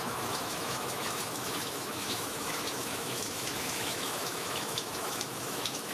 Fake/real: fake